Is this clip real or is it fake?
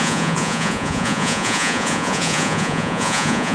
fake